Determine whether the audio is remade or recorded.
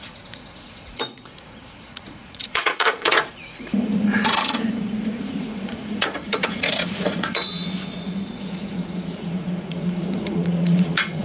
remade